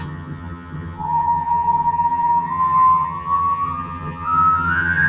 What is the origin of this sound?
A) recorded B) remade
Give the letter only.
B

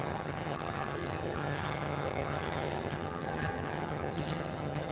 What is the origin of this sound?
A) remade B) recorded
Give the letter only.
A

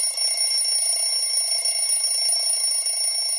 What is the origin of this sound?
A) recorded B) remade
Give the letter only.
A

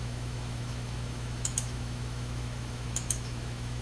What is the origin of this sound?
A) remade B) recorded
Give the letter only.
A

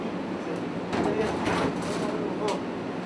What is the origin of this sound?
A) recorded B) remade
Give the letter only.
A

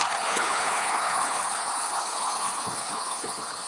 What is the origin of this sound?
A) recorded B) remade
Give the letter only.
B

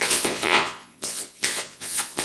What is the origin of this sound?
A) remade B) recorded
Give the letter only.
A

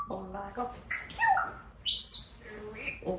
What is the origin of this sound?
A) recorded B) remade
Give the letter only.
A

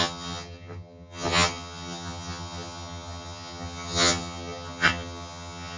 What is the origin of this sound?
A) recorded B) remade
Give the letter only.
B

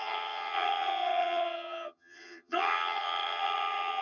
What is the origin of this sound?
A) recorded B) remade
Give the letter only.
B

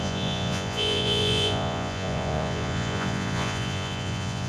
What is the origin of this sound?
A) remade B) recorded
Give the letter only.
A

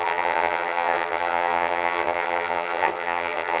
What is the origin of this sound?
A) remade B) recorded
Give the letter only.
A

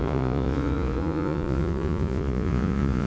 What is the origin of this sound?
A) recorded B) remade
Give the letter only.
B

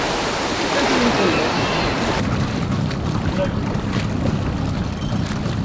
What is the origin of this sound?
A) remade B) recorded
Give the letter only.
B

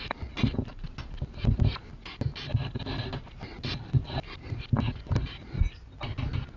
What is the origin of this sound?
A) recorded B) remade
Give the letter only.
A